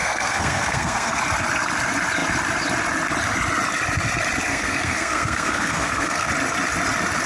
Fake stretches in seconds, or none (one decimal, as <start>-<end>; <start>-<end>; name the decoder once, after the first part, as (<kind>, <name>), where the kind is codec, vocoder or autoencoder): 0.0-1.2 (codec, SNAC); 4.5-6.3